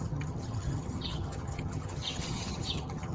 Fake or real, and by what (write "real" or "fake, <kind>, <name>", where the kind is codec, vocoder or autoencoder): fake, vocoder, HiFi-GAN